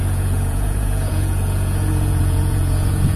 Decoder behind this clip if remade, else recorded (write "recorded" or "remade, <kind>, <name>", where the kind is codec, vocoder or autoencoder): remade, vocoder, Vocos